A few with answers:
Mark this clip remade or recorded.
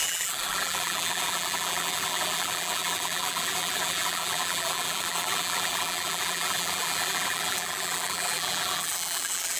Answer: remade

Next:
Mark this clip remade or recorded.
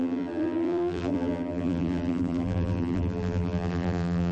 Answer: remade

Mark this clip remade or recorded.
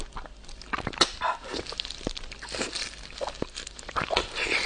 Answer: recorded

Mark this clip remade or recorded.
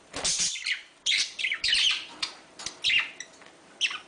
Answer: remade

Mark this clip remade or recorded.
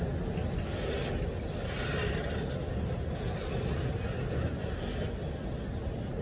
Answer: recorded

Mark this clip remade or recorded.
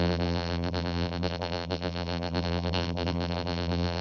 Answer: remade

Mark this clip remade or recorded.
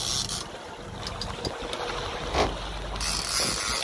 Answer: recorded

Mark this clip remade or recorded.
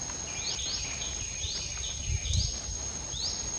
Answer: recorded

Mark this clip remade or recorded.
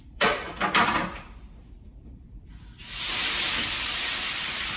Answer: remade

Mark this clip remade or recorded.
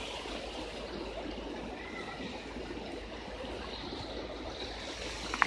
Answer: recorded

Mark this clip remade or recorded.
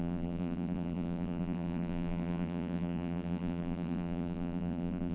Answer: remade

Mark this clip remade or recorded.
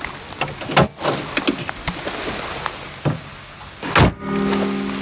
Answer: recorded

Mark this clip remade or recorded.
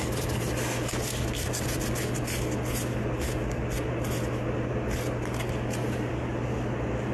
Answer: recorded